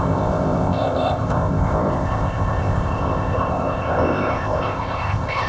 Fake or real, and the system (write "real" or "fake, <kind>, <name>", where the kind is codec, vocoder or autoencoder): fake, codec, ZipCodec